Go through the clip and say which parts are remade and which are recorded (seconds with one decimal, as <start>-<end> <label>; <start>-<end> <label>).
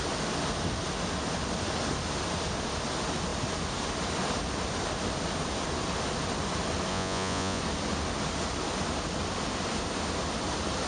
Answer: 0.0-6.9 recorded; 6.9-7.6 remade; 7.6-10.9 recorded